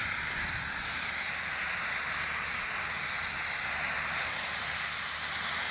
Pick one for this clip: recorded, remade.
recorded